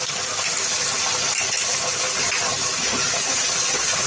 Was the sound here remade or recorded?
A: recorded